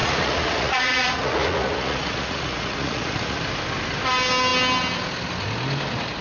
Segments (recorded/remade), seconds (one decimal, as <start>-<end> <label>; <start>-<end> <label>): 0.0-3.4 remade; 3.4-6.2 recorded